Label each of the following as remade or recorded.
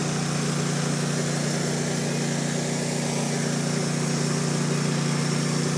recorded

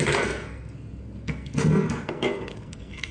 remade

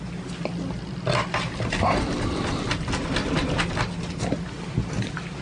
recorded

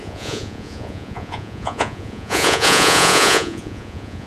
remade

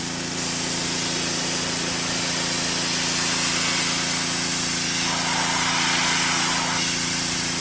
recorded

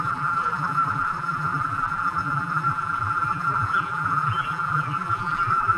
remade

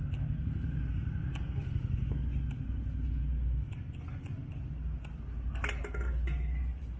recorded